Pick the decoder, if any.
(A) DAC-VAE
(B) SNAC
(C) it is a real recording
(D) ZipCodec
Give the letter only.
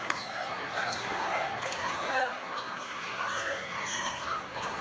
B